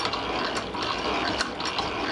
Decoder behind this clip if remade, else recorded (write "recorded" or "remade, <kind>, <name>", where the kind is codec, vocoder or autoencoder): recorded